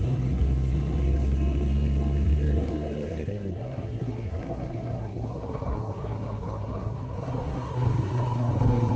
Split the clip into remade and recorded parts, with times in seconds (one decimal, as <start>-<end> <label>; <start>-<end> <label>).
0.0-9.0 remade